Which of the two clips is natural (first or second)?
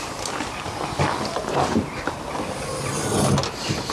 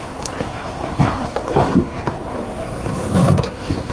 first